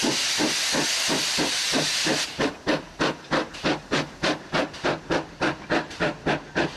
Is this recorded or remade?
recorded